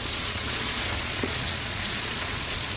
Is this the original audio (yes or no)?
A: no